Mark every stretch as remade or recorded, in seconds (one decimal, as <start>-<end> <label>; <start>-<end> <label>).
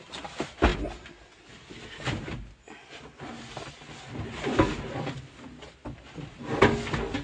0.0-7.2 recorded